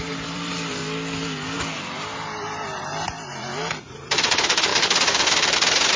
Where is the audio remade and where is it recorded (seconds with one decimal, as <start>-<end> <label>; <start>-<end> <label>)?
0.0-0.8 remade; 0.8-3.8 recorded; 3.8-6.0 remade